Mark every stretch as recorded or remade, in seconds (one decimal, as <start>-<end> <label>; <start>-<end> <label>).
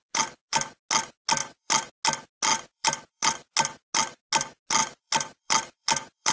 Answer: 0.0-1.4 recorded; 1.4-1.9 remade; 1.9-2.5 recorded; 2.5-3.5 remade; 3.5-4.8 recorded; 4.8-6.3 remade